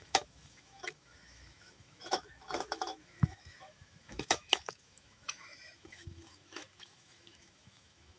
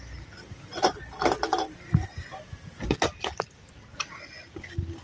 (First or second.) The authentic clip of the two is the second